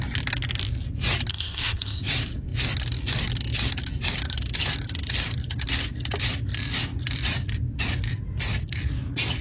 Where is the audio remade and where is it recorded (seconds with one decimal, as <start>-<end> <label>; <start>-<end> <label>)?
0.0-1.3 recorded; 1.3-2.0 remade; 2.0-9.4 recorded

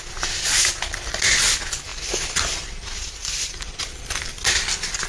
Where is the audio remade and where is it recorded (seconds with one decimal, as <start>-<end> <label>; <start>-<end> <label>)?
0.0-1.9 recorded; 1.9-2.7 remade; 2.7-3.2 recorded; 3.2-4.3 remade; 4.3-5.1 recorded

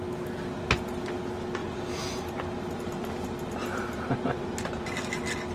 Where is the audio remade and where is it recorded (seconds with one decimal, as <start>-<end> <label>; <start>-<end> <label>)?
0.0-1.6 recorded; 1.6-4.9 remade; 4.9-5.5 recorded